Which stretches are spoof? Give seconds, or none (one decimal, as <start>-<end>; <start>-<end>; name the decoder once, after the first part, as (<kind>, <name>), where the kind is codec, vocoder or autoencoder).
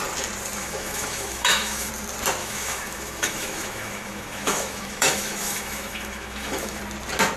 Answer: 0.6-1.9 (autoencoder, DAC-VAE); 2.4-6.8